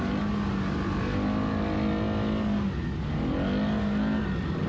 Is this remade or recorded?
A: recorded